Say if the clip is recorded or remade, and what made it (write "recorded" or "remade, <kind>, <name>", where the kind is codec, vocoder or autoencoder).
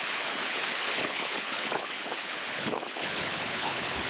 remade, codec, HILCodec